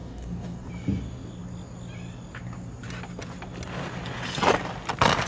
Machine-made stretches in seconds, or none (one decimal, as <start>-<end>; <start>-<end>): 0.0-0.7